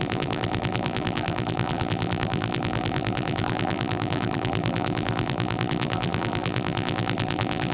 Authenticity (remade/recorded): remade